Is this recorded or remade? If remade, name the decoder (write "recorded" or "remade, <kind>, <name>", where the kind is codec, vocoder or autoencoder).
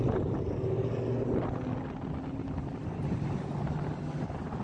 recorded